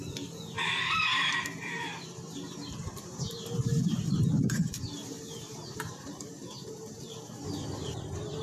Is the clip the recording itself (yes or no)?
no